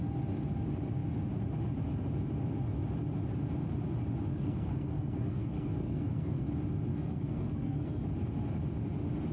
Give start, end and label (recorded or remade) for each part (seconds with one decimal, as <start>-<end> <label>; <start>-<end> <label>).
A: 0.0-4.3 recorded; 4.3-6.5 remade; 6.5-6.9 recorded; 6.9-8.1 remade; 8.1-9.3 recorded